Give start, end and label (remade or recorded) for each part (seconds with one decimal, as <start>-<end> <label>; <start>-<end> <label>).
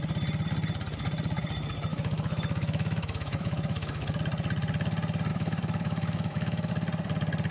0.0-1.9 recorded; 1.9-4.2 remade; 4.2-5.3 recorded; 5.3-6.7 remade; 6.7-7.5 recorded